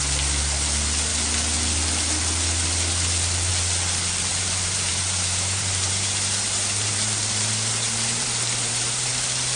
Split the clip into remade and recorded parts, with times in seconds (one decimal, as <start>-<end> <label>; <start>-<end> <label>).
0.0-4.3 recorded; 4.3-9.1 remade; 9.1-9.6 recorded